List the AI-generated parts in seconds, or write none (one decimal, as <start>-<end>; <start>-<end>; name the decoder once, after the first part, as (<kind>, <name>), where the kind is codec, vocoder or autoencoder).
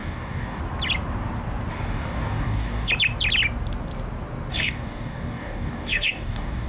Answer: 0.0-0.6 (codec, DAC); 1.7-2.9; 4.5-6.7